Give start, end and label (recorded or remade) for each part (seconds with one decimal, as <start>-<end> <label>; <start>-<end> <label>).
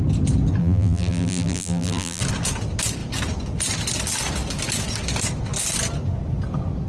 0.0-0.6 recorded; 0.6-2.2 remade; 2.2-6.9 recorded